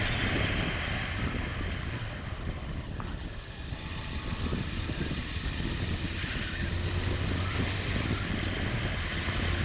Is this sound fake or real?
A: fake